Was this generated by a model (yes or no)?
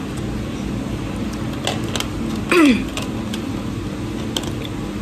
no